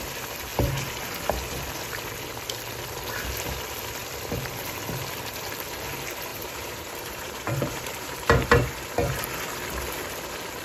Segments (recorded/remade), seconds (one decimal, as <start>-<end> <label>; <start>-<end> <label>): 0.0-6.3 recorded; 6.3-9.2 remade; 9.2-10.6 recorded